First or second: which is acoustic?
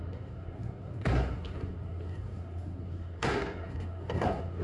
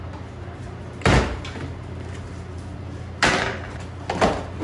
second